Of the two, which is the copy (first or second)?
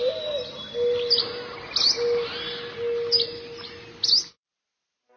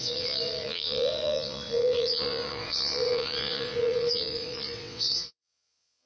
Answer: second